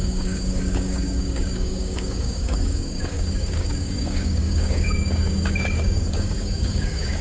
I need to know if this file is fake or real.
fake